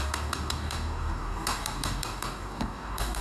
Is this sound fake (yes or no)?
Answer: yes